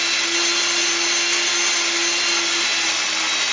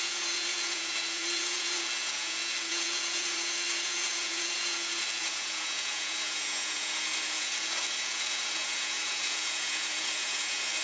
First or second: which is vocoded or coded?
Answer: second